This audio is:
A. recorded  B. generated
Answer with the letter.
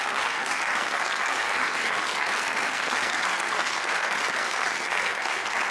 B